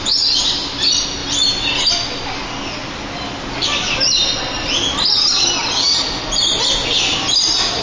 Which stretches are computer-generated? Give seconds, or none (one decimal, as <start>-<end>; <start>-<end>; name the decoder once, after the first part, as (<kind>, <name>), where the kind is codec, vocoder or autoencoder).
none